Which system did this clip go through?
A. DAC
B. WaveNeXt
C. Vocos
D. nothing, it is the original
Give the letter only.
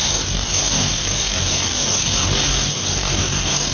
A